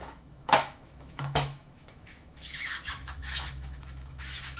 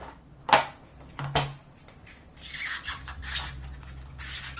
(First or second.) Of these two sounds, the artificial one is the first